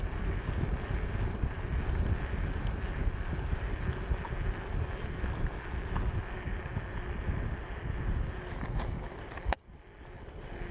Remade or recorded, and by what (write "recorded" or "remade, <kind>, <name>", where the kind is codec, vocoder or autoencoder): recorded